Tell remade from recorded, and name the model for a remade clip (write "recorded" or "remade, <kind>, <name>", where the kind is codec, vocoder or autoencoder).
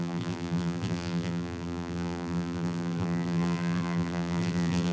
remade, vocoder, BigVGAN v2